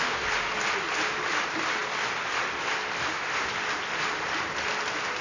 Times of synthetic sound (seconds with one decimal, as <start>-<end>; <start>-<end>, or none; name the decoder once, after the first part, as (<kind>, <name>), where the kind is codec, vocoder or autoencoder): none